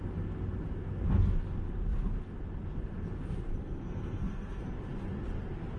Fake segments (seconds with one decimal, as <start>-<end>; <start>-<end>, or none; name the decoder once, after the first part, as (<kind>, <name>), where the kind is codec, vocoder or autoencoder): 3.5-4.6 (codec, SNAC)